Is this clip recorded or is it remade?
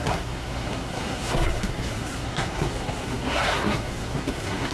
remade